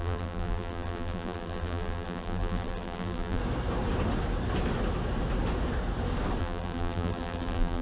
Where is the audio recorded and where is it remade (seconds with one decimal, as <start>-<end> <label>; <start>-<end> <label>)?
0.0-3.4 remade; 3.4-6.4 recorded; 6.4-7.8 remade